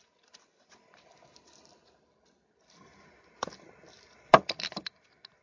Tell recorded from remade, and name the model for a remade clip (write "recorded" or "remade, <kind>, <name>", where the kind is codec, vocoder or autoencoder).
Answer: remade, vocoder, BigVGAN v2